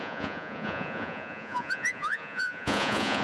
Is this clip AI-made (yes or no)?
yes